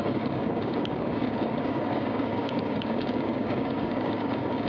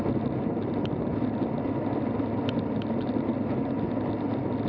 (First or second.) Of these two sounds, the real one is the second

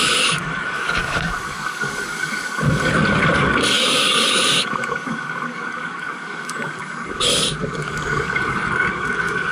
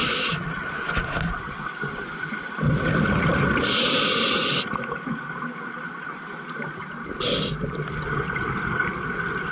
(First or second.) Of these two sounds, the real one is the second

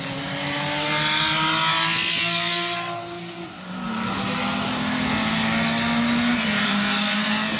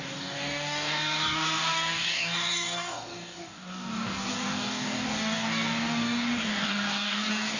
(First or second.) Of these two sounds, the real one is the first